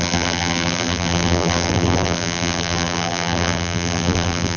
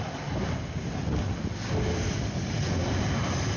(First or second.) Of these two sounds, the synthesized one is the first